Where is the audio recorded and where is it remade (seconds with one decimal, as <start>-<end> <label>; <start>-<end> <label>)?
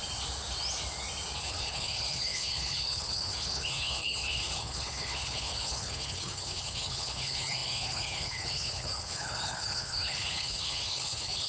0.0-1.4 recorded; 1.4-11.5 remade